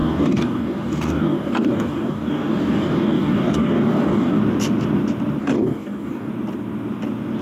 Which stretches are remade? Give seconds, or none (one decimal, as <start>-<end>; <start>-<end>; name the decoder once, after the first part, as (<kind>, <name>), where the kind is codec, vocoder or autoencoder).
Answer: 0.0-4.4 (codec, DAC); 5.4-6.3